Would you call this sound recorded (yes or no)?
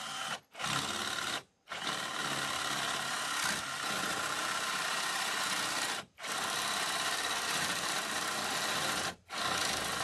yes